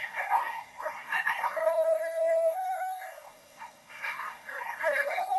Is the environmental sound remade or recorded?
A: remade